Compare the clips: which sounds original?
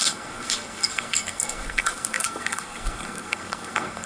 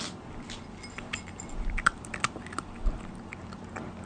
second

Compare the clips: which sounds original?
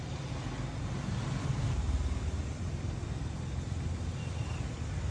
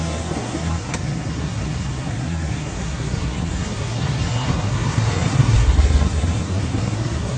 first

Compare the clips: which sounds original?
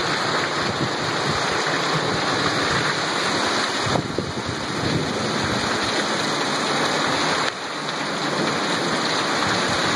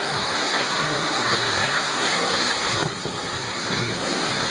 first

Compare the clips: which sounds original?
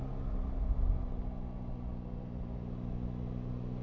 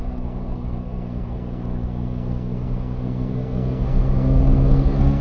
first